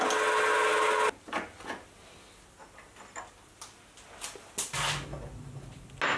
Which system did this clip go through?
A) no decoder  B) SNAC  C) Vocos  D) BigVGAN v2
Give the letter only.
A